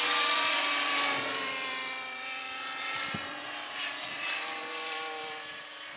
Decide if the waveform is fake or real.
fake